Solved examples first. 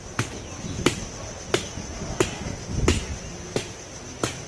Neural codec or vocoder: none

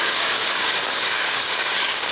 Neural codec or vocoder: codec, DAC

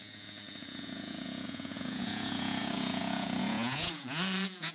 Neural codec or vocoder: vocoder, Vocos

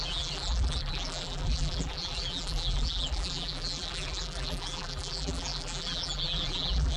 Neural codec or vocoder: vocoder, BigVGAN v2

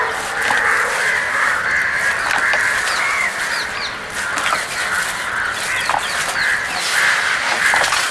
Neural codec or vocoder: none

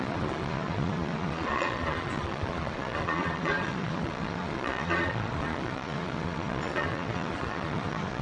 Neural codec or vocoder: vocoder, Vocos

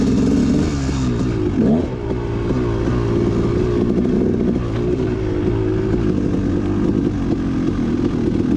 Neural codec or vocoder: none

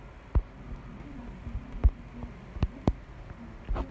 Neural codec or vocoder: none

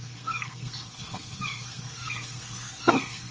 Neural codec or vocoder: codec, SNAC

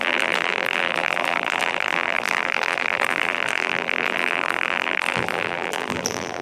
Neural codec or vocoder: vocoder, BigVGAN v2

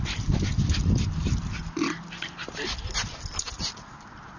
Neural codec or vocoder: none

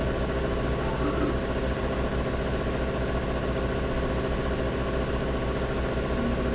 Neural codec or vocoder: none